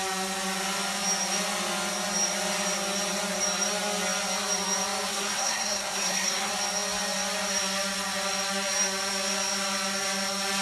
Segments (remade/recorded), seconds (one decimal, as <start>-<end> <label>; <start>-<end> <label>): 0.0-5.1 recorded; 5.1-6.5 remade; 6.5-10.6 recorded